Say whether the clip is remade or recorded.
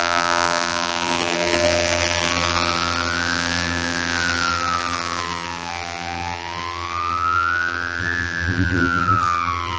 remade